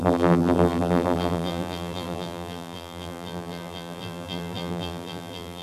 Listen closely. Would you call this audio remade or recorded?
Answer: remade